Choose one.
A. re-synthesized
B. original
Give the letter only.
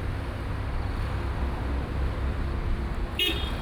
B